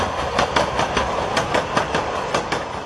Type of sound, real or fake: real